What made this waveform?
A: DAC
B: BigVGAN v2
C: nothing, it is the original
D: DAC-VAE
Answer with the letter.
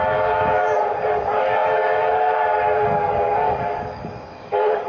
A